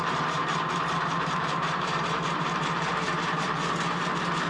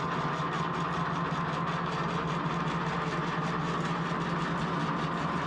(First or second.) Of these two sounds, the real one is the second